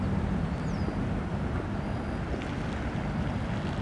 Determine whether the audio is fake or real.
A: real